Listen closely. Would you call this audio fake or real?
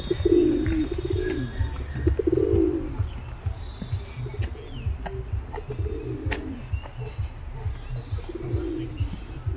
real